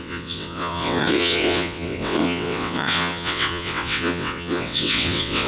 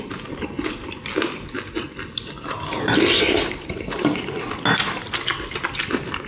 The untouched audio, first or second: second